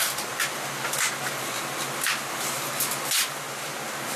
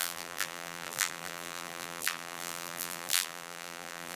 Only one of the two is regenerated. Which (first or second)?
second